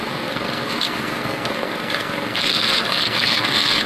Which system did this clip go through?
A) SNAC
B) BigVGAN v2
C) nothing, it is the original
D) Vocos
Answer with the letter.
A